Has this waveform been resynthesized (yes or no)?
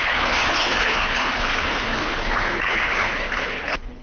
yes